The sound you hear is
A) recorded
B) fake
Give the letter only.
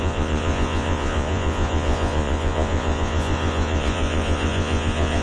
B